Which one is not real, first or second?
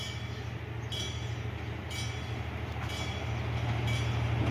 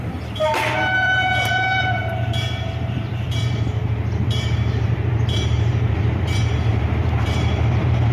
second